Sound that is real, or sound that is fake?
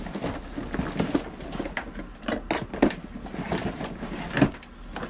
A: real